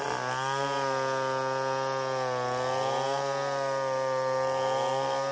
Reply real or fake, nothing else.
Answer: real